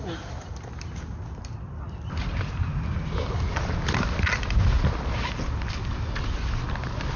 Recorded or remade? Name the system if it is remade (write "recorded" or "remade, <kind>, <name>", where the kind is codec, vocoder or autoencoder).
recorded